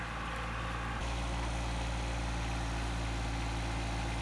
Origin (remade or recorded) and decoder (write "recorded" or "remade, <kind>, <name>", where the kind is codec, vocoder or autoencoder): recorded